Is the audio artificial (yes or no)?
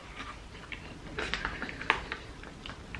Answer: no